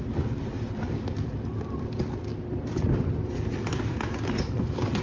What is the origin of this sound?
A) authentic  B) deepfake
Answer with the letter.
B